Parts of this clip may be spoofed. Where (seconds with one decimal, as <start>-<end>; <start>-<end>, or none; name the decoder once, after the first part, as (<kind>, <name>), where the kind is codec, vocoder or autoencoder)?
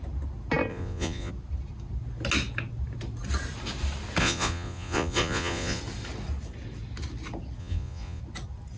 0.7-1.3 (vocoder, Vocos); 4.2-5.8; 7.6-8.2